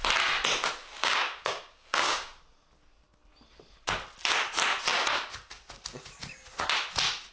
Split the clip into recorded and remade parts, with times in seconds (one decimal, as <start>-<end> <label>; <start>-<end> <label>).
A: 0.0-1.0 recorded; 1.0-2.4 remade; 2.4-7.3 recorded